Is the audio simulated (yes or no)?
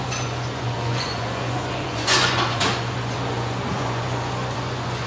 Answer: yes